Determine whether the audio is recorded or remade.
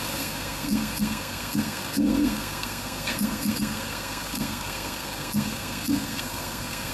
remade